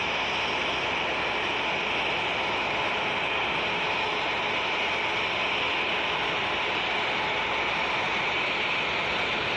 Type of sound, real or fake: real